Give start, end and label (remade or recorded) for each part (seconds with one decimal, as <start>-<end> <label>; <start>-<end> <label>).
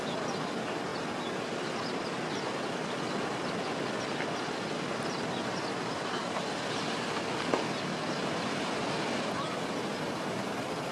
0.0-10.9 recorded